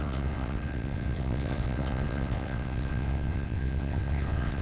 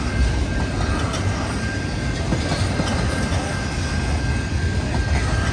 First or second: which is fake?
first